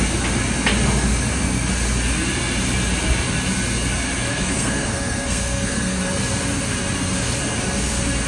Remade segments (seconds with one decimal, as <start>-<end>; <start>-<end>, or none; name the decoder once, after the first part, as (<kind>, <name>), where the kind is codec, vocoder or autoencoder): 4.3-6.0 (codec, SNAC)